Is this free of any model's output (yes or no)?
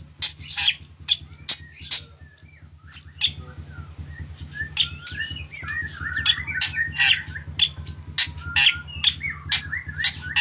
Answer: yes